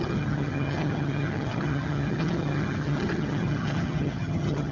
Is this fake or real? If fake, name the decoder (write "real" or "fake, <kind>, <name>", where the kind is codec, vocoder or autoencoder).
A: fake, vocoder, HiFi-GAN